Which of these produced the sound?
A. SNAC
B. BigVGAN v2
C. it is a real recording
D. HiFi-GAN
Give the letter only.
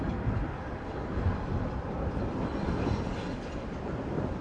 C